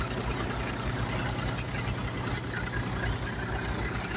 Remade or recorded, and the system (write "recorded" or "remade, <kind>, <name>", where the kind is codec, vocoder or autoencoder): recorded